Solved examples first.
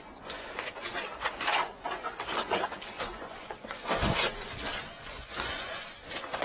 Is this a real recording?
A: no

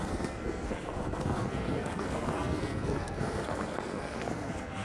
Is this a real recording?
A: no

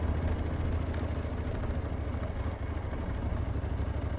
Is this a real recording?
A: yes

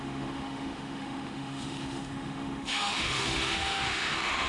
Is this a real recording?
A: no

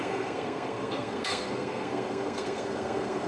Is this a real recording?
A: no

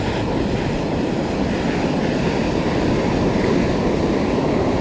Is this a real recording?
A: yes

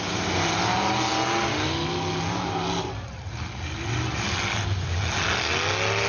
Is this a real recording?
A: yes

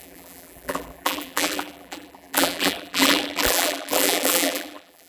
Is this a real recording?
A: no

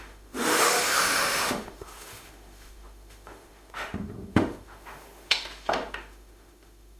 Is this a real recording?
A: no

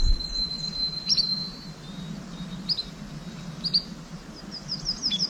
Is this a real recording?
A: yes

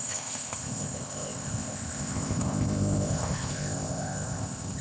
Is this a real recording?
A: no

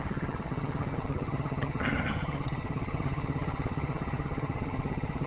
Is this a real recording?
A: no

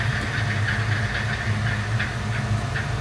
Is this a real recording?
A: yes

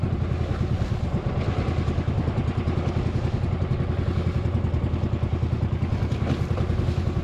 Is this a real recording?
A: yes